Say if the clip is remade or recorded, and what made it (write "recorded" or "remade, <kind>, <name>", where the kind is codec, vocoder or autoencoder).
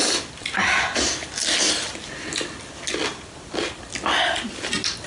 recorded